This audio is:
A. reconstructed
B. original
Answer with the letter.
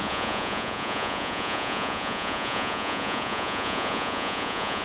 A